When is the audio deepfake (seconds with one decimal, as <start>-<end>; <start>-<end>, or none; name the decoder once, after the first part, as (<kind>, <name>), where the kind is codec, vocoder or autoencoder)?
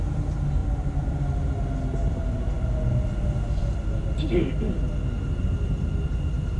0.6-1.2 (vocoder, BigVGAN v2); 2.0-2.9